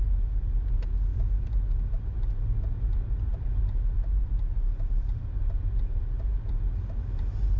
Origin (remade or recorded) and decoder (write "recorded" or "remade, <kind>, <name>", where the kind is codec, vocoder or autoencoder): recorded